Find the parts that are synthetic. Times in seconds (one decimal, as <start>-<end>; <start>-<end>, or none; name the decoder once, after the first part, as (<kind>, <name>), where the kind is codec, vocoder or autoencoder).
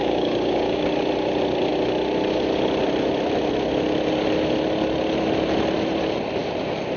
0.0-0.8 (codec, DAC)